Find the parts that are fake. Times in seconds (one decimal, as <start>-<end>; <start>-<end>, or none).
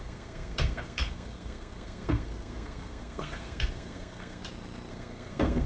0.0-4.4; 4.9-5.7